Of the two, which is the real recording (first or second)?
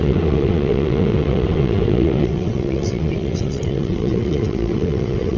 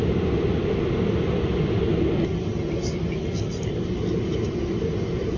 second